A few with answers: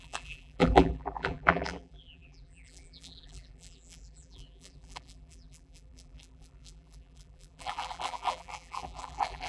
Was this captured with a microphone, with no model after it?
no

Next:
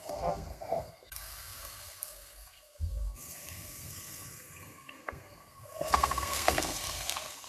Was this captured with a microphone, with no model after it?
no